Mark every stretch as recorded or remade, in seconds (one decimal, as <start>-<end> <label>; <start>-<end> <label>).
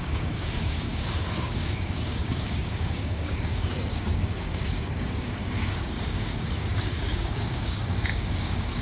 0.0-8.8 remade